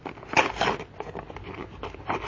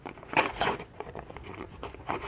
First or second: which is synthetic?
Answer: second